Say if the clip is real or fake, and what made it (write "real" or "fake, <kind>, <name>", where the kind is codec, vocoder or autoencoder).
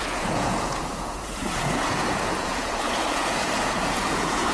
fake, vocoder, Vocos